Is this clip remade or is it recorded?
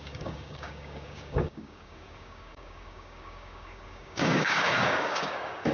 remade